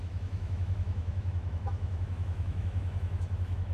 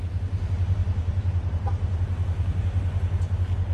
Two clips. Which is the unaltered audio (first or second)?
second